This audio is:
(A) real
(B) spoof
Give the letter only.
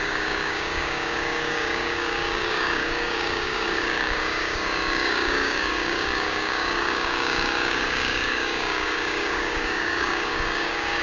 B